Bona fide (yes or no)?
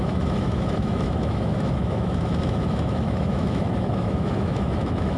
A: no